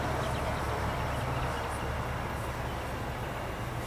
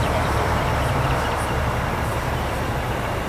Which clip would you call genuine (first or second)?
first